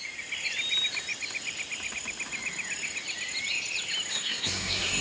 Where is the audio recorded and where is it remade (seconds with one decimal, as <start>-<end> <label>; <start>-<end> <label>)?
0.0-4.1 recorded; 4.1-5.0 remade